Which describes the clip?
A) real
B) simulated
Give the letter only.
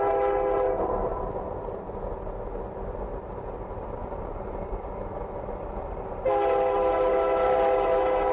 A